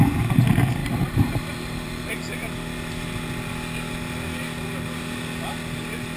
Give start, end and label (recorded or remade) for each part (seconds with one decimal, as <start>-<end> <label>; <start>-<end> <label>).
0.0-0.8 recorded; 0.8-2.1 remade; 2.1-6.2 recorded